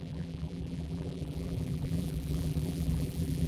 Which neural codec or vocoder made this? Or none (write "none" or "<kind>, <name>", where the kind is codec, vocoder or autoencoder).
vocoder, BigVGAN v2